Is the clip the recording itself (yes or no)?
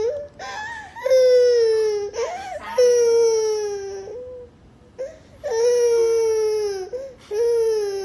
yes